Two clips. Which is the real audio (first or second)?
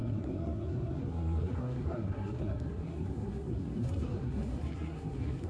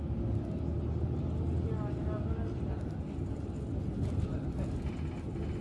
second